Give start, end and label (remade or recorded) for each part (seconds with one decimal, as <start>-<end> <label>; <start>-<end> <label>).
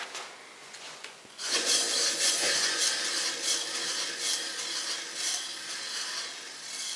0.0-0.6 recorded; 0.6-2.8 remade; 2.8-7.0 recorded